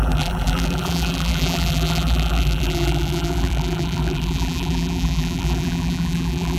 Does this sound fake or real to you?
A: fake